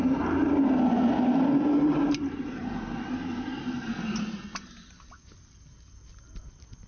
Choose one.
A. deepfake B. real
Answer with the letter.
B